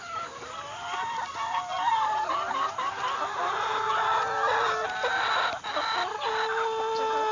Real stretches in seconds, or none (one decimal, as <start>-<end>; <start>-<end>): 0.0-7.3

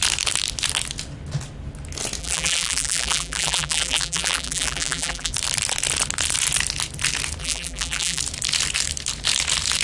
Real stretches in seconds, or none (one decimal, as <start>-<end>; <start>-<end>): 0.0-2.2; 5.3-7.4; 8.2-9.8

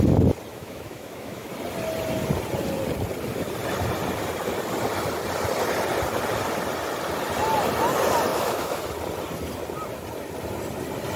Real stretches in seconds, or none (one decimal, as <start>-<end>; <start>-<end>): 0.0-0.5; 1.5-8.3; 8.8-11.2

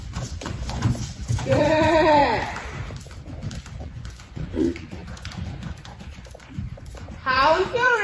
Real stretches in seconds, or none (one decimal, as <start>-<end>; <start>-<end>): 2.2-3.8